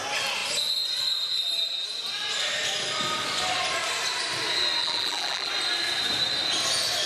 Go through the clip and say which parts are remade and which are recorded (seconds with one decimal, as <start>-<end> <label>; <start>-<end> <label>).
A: 0.0-4.8 recorded; 4.8-5.5 remade; 5.5-7.1 recorded